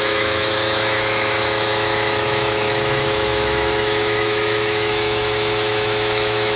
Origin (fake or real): fake